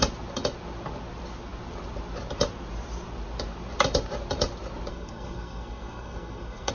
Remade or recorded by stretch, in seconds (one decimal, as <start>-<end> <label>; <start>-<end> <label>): 0.0-4.9 recorded; 4.9-6.7 remade